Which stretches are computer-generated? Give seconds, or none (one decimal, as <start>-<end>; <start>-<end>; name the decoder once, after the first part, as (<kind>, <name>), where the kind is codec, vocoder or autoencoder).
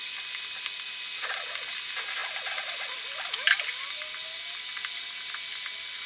none